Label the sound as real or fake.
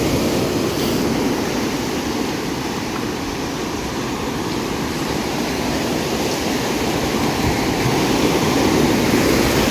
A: real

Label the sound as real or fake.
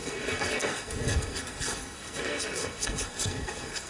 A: fake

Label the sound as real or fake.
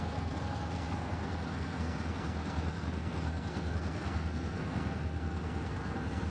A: fake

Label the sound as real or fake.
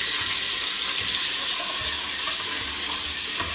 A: real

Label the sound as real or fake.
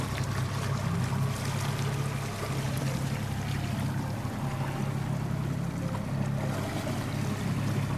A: real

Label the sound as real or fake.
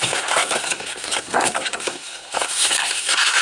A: fake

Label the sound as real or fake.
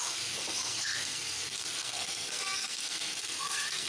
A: fake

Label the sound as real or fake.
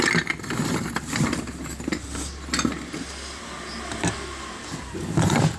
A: real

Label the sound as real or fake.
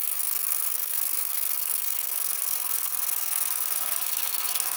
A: fake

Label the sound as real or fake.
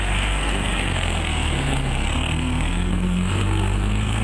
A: fake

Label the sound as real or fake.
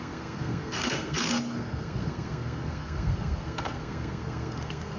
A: fake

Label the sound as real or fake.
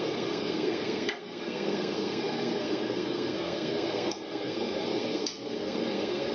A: fake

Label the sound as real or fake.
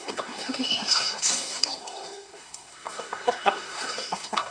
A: fake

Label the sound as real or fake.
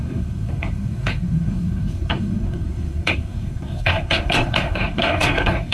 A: fake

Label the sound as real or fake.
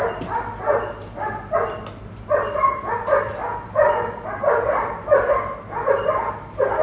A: real